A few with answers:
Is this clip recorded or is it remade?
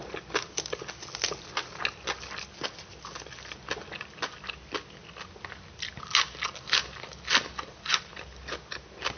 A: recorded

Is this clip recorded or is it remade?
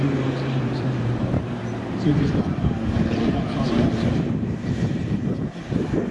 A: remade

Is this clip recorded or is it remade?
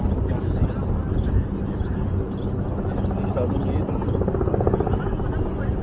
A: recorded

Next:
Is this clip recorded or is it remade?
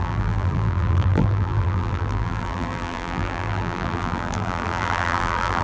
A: remade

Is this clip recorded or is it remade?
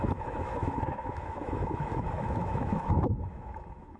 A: remade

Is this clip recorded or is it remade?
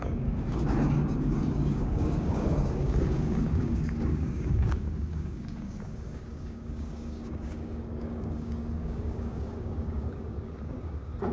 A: remade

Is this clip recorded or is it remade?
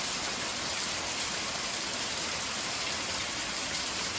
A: remade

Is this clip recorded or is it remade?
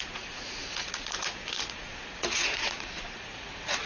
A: remade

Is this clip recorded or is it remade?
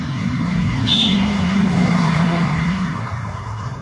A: remade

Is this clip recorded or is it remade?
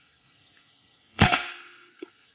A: remade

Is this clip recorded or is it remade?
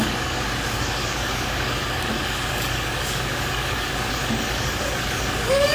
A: remade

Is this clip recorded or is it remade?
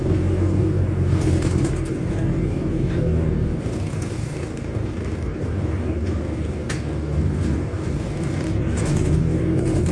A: remade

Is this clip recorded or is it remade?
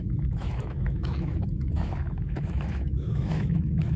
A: remade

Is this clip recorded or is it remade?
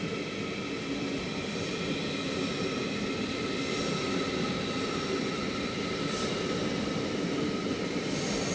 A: recorded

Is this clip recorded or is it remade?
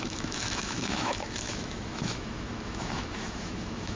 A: remade